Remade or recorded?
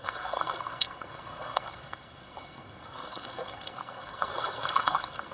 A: remade